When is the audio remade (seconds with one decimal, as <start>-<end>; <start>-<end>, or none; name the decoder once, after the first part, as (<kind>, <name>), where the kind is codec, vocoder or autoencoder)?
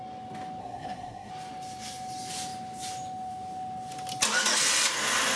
0.6-1.3 (codec, SNAC)